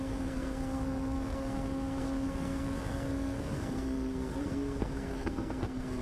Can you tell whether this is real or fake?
fake